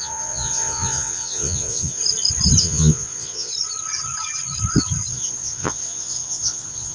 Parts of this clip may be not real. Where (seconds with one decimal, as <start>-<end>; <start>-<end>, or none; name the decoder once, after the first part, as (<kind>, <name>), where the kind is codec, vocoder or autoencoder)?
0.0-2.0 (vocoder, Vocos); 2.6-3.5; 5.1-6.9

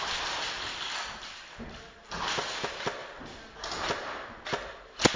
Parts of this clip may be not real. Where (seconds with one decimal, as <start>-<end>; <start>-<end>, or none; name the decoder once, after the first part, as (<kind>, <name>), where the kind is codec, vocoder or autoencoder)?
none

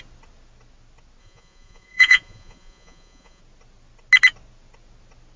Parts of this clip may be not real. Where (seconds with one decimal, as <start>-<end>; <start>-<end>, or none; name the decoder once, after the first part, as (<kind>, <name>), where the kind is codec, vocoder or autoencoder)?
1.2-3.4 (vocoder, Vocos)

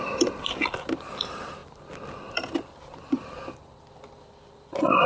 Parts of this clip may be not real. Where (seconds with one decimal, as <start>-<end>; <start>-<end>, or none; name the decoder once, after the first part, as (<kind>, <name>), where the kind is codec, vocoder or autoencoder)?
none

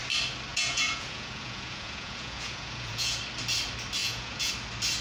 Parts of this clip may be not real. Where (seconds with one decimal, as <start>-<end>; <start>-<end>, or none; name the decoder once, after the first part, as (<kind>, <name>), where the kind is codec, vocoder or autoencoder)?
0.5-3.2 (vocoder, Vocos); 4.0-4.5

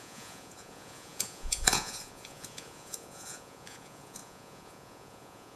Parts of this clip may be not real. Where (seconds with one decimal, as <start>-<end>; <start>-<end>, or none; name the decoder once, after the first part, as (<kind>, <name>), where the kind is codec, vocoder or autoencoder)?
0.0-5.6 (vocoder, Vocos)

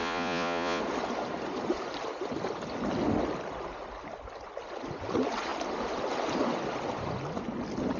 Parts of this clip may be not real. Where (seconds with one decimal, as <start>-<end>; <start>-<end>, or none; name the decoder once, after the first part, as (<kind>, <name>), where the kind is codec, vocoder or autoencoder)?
0.0-0.8 (vocoder, Vocos)

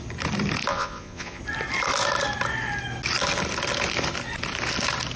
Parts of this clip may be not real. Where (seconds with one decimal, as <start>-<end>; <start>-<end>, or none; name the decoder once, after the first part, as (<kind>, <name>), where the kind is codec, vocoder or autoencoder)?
0.7-1.4 (vocoder, Vocos)